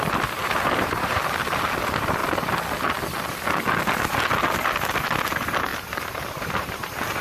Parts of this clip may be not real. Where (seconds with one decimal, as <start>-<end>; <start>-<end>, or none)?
0.4-1.2; 5.7-7.2